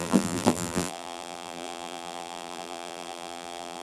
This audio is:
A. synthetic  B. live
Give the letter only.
A